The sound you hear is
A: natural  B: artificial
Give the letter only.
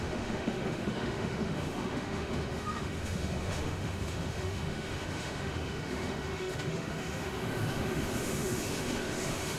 B